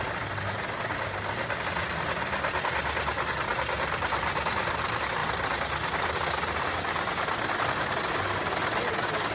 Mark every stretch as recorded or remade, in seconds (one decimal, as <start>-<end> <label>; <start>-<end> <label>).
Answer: 0.0-9.3 recorded